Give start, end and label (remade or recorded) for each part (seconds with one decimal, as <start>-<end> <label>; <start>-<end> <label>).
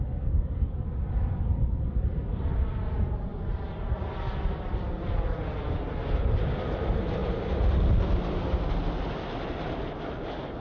0.0-10.6 recorded